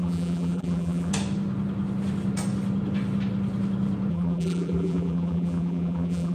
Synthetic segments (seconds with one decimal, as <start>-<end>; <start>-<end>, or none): 0.0-1.1; 4.1-6.3

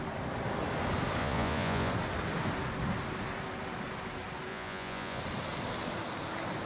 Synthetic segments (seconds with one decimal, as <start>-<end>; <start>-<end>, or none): 1.2-1.9; 4.5-5.2

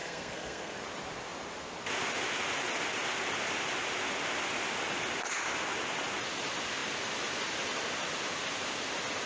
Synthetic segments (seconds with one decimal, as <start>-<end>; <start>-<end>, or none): 0.0-0.8

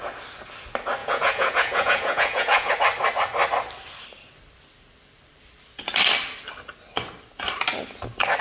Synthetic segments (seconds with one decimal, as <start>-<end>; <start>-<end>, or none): 1.0-2.7

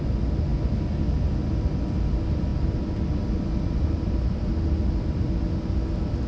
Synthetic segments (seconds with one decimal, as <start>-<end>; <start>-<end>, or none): none

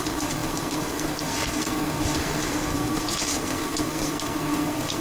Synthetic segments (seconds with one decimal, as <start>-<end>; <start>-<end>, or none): 0.0-5.0

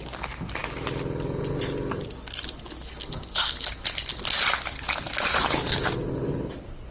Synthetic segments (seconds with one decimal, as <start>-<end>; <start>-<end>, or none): 5.3-5.8